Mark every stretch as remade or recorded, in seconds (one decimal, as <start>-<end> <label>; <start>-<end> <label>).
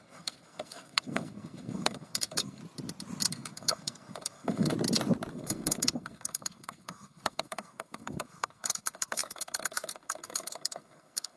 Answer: 0.0-2.6 remade; 2.6-3.3 recorded; 3.3-4.7 remade; 4.7-5.3 recorded; 5.3-11.4 remade